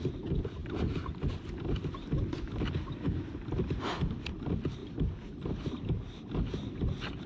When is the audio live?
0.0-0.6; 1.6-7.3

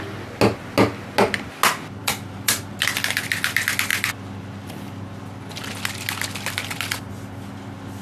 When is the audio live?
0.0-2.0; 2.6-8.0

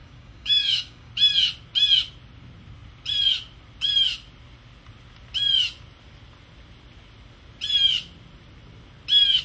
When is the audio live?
1.1-9.4